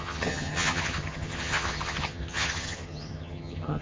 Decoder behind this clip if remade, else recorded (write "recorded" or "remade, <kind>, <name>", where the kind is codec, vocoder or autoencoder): remade, vocoder, HiFi-GAN